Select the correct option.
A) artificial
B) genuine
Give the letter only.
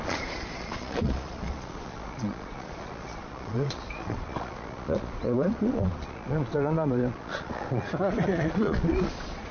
A